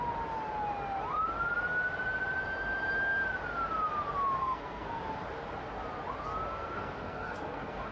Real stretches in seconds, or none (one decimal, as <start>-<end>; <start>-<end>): 0.0-4.4; 5.0-6.5